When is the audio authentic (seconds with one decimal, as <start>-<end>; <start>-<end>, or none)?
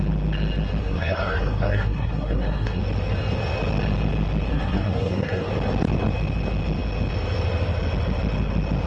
0.0-0.8; 2.8-4.5; 5.5-8.9